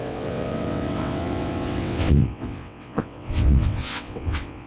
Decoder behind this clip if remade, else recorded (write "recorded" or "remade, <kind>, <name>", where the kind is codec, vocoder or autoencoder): remade, vocoder, WaveNeXt